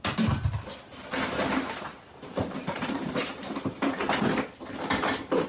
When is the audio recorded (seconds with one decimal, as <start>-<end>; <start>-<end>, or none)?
0.0-0.9; 4.2-5.5